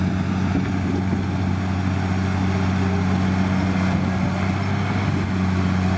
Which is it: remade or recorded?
recorded